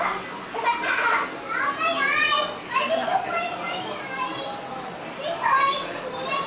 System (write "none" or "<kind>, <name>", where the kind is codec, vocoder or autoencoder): none